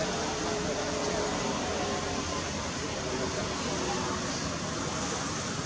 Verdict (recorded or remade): recorded